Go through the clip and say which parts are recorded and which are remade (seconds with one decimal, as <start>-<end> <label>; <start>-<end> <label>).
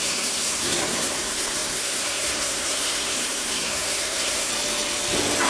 0.0-4.5 remade; 4.5-5.5 recorded